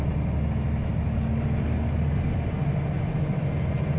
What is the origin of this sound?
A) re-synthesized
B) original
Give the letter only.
B